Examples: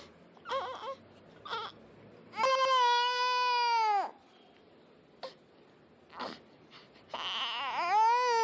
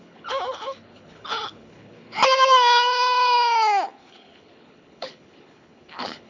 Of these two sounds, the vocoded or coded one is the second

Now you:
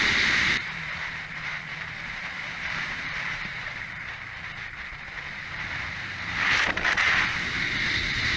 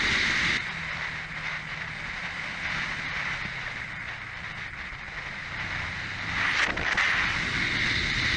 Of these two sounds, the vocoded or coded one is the first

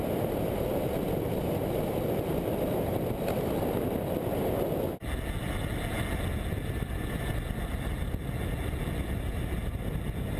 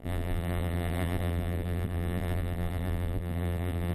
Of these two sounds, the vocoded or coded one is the second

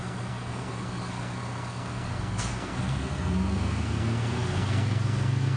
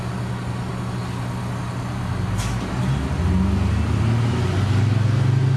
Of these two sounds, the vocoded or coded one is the first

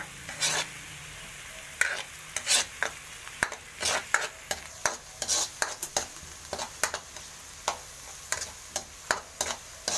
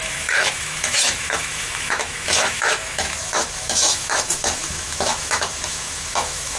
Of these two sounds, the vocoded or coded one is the second